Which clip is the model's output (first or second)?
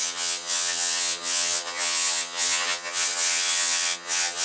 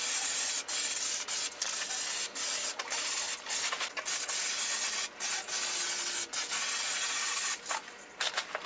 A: first